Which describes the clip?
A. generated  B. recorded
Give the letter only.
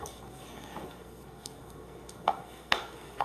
A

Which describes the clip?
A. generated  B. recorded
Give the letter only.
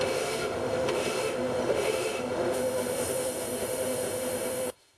A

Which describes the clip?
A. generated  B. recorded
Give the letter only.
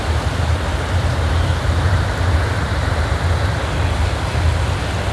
B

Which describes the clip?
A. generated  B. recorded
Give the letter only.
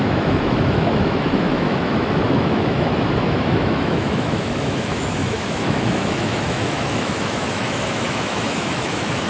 A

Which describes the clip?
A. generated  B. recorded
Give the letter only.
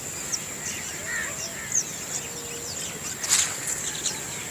B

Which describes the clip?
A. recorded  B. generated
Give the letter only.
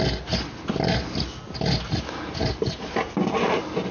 A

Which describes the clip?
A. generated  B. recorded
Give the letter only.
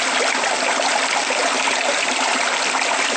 B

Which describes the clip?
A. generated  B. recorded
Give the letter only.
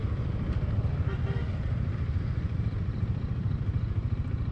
A